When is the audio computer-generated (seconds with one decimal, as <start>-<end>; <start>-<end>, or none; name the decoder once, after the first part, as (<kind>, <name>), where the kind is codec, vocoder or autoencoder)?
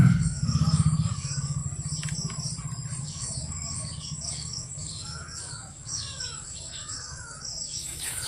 0.0-1.6 (codec, DAC); 3.0-8.3